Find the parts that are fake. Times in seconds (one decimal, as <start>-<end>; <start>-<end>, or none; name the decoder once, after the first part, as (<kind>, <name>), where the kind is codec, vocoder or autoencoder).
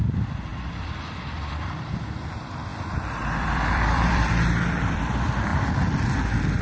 0.5-1.9 (vocoder, BigVGAN v2); 2.7-5.0